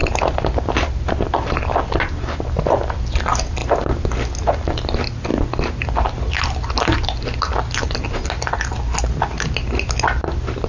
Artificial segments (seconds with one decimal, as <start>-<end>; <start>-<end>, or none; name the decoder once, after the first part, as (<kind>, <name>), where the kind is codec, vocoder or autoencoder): none